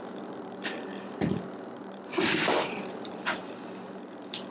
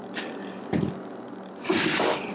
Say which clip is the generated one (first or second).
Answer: first